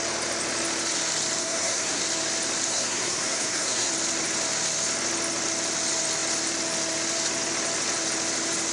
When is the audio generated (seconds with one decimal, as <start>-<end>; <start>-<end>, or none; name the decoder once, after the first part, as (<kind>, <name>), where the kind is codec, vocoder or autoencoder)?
1.4-2.0 (codec, SNAC); 2.7-3.9